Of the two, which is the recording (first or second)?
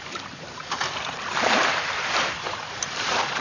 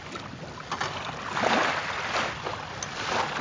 second